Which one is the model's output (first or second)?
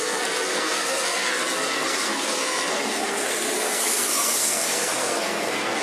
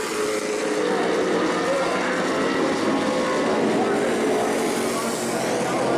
first